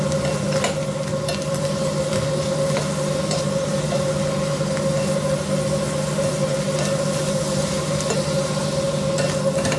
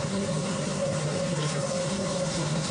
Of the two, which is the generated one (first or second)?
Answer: second